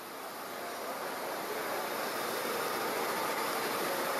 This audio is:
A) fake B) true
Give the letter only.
B